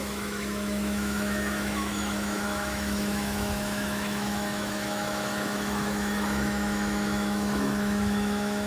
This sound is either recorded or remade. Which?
remade